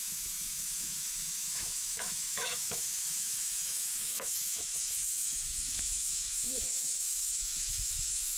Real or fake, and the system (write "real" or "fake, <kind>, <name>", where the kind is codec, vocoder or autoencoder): fake, autoencoder, DAC-VAE